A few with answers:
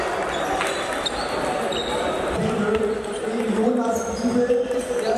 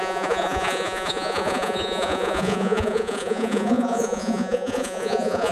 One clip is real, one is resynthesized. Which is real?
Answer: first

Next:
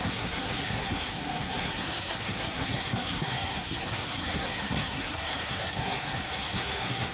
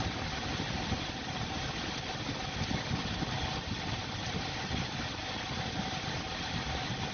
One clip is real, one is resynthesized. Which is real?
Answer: second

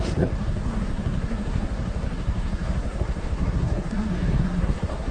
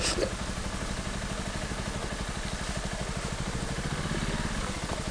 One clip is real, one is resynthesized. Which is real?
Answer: second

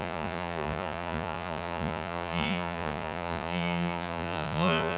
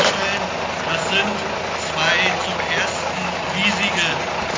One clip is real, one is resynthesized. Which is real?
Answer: second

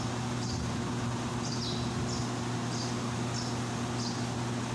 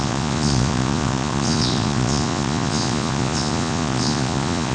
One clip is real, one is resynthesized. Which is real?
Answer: first